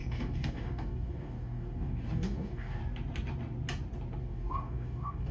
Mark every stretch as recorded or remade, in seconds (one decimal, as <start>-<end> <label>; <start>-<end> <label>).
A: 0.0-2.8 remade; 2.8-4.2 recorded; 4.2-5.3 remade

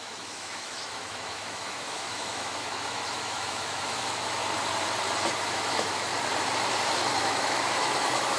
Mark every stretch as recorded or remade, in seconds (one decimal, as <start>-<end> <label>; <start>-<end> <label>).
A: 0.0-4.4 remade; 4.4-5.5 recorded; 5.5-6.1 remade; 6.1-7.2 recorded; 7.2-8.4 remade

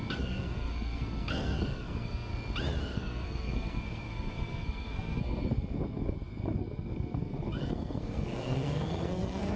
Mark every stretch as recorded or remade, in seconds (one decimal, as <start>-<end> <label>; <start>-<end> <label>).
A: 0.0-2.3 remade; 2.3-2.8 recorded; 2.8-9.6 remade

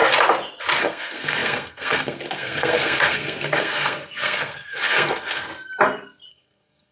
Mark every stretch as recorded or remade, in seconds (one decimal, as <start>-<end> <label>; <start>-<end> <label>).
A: 0.0-0.8 recorded; 0.8-5.5 remade; 5.5-6.3 recorded; 6.3-6.9 remade

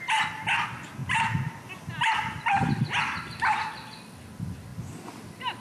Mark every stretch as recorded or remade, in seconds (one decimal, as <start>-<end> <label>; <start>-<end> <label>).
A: 0.0-5.6 recorded